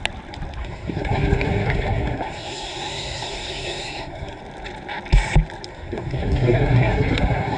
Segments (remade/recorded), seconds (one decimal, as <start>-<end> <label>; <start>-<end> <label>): 0.0-0.6 recorded; 0.6-4.4 remade; 4.4-5.7 recorded; 5.7-7.6 remade